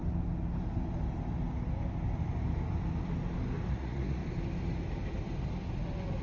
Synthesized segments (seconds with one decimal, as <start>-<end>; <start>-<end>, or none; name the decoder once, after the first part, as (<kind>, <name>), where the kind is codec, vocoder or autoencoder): 3.7-4.2 (vocoder, Vocos)